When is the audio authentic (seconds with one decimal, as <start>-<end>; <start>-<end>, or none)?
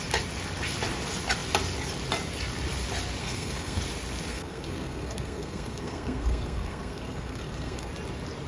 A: 0.0-3.2; 3.8-4.3; 7.9-8.5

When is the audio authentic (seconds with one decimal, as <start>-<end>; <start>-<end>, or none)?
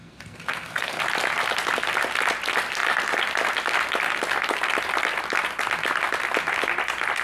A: 1.0-7.2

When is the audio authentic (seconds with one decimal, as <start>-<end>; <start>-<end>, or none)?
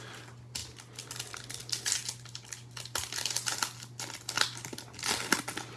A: 0.0-5.8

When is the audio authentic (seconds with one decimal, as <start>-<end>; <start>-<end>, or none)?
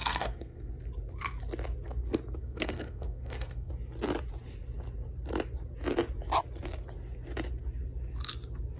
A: 0.7-2.4; 3.7-8.8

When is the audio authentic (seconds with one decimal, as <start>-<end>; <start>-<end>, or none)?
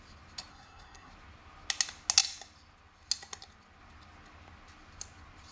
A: 0.0-0.5; 1.1-5.5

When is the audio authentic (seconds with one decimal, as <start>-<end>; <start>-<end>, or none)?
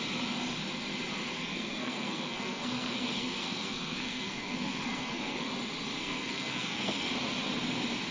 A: 0.0-1.5; 5.5-6.0; 7.1-8.1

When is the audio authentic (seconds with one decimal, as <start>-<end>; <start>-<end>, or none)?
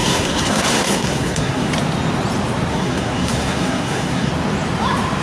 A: 1.7-2.7; 4.3-5.2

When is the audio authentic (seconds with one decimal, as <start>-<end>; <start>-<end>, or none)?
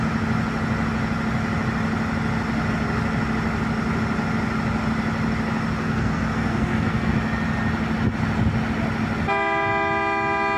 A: 0.0-5.8; 7.1-10.6